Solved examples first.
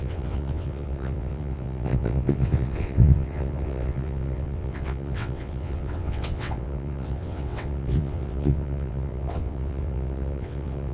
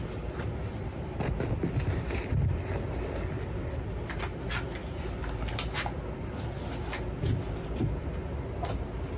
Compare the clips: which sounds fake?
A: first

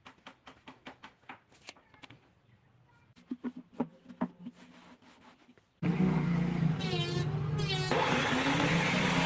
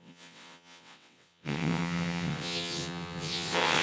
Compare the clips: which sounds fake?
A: second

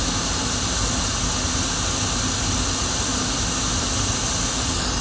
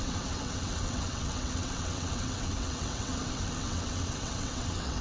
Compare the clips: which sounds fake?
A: second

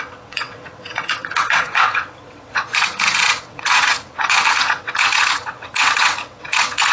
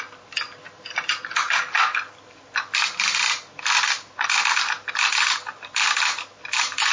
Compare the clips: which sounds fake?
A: first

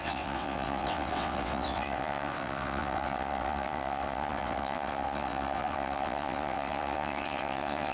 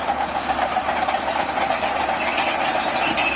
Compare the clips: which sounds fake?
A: first